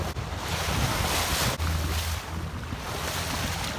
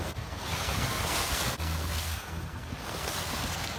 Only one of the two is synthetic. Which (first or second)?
second